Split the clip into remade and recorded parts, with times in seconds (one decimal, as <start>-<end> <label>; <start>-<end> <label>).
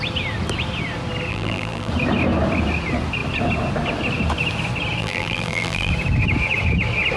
0.0-1.3 recorded; 1.3-1.9 remade; 1.9-5.0 recorded; 5.0-5.9 remade; 5.9-7.2 recorded